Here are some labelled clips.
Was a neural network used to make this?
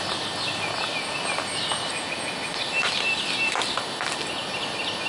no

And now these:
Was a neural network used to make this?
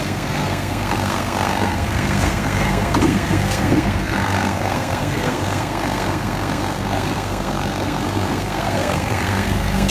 yes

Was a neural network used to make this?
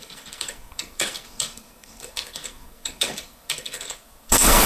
yes